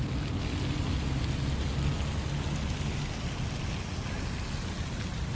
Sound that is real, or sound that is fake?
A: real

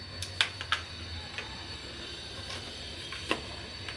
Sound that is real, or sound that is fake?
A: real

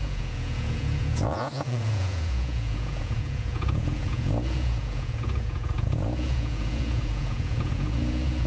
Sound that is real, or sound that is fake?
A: fake